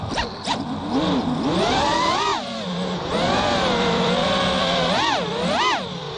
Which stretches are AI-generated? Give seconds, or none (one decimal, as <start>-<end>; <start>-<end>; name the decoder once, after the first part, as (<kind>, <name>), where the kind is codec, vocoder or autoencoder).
2.3-6.2 (vocoder, BigVGAN v2)